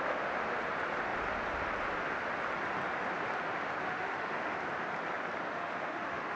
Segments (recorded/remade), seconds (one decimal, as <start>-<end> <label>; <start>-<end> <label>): 0.0-3.9 recorded; 3.9-4.6 remade; 4.6-5.5 recorded; 5.5-6.4 remade